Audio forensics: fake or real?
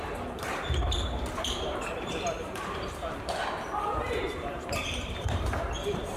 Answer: fake